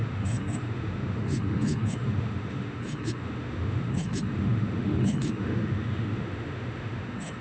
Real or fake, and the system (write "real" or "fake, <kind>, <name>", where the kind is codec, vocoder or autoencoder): fake, autoencoder, DAC-VAE